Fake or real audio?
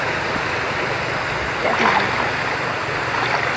real